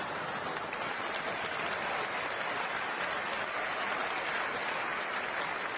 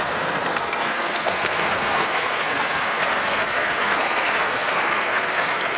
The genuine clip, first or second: first